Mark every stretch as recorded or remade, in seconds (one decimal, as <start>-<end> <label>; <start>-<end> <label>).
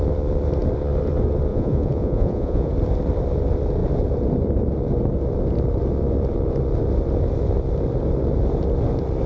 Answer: 0.0-1.5 recorded; 1.5-2.7 remade; 2.7-9.3 recorded